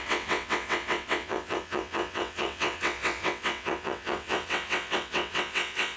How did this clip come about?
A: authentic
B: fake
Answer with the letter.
B